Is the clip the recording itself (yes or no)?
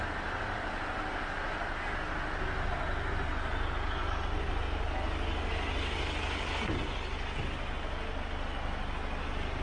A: yes